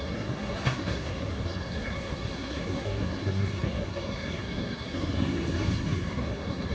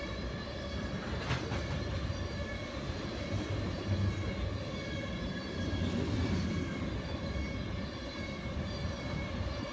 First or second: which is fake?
first